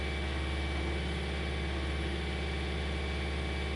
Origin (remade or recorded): recorded